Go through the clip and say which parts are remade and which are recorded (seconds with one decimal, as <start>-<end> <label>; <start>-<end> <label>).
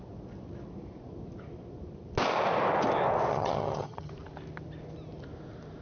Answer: 0.0-3.3 recorded; 3.3-4.1 remade; 4.1-5.8 recorded